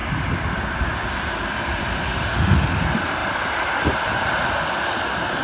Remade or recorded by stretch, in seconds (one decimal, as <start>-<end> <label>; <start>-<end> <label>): 0.0-2.3 recorded; 2.3-2.8 remade; 2.8-5.4 recorded